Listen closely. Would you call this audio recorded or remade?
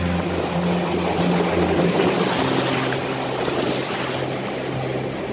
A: recorded